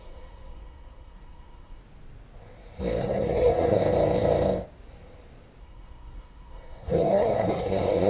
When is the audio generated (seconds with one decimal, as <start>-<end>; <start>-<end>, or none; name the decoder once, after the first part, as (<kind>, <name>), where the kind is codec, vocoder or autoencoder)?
0.0-1.8 (codec, SNAC); 3.0-3.8; 5.6-8.1